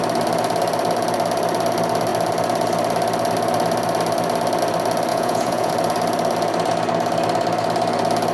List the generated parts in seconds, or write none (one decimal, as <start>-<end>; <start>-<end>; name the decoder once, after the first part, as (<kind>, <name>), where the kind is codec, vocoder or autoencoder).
5.1-5.7 (vocoder, Vocos)